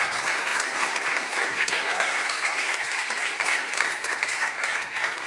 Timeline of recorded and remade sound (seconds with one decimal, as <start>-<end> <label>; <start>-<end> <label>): 0.0-5.3 remade